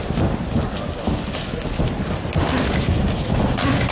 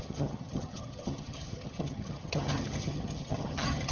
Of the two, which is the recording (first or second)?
first